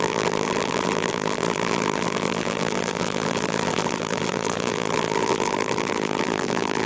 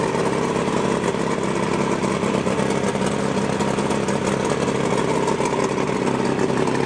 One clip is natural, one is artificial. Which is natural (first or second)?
second